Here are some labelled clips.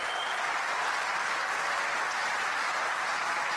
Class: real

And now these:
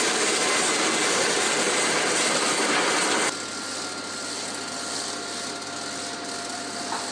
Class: real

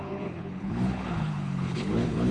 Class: fake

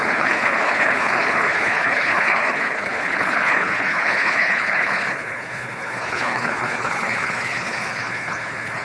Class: fake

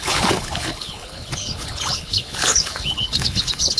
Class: fake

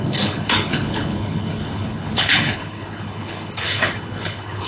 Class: fake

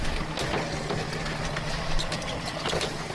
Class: real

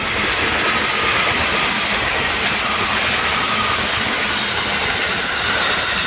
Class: real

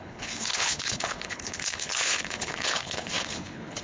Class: fake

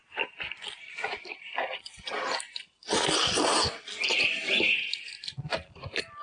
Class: real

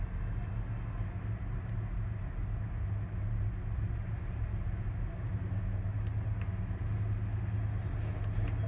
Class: real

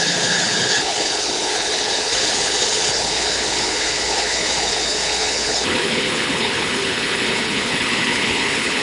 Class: fake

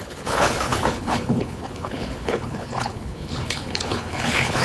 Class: fake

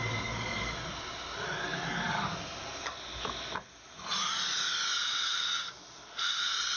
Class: real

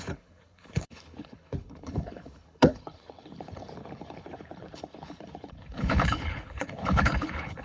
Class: fake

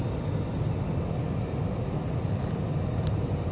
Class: real